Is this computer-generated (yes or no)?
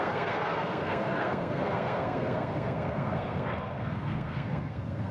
yes